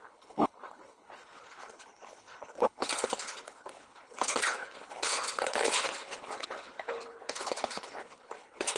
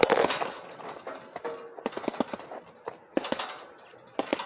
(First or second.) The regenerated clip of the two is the first